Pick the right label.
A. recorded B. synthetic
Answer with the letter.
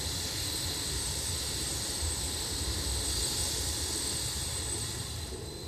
B